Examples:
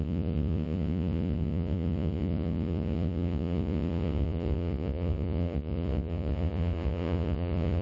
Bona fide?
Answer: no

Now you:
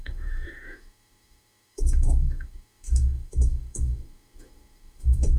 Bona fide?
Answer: no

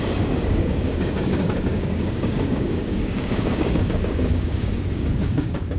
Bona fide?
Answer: no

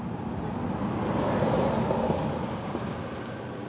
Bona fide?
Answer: yes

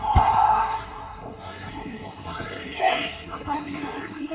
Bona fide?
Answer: no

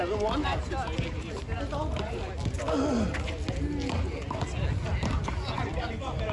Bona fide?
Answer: yes